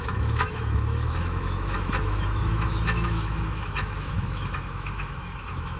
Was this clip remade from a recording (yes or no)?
yes